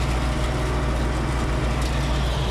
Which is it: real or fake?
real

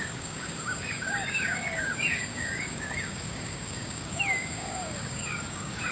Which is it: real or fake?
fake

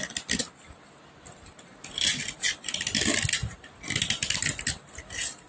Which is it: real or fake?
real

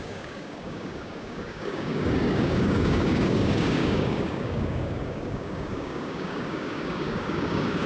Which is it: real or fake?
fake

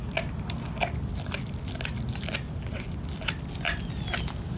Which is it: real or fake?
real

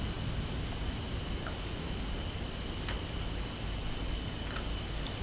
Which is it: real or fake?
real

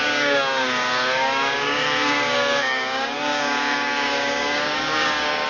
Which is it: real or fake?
fake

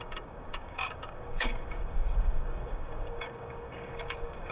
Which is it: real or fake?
fake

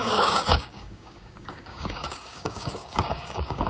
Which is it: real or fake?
fake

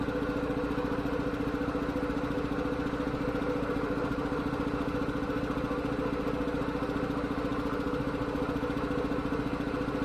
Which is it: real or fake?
real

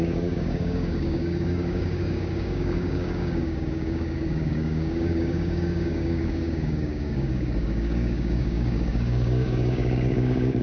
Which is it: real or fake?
fake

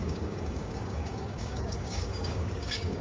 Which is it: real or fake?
fake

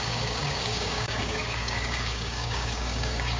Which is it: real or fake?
fake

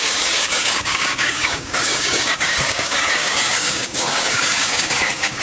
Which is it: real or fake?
fake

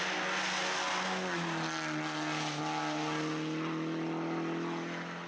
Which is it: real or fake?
real